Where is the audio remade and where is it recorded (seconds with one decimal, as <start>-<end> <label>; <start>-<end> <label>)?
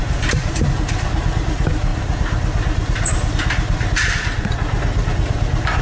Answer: 0.0-5.8 remade